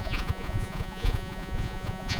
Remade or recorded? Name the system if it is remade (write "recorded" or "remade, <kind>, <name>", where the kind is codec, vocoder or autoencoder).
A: remade, vocoder, Vocos